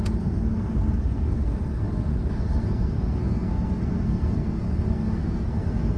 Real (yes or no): no